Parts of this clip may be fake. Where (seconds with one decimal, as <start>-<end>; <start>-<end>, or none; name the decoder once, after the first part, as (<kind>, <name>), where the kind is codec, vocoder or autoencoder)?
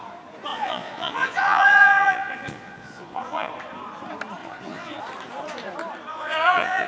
0.5-3.5 (vocoder, Vocos); 4.4-5.0; 6.1-6.9